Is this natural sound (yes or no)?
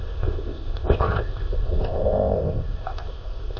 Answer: no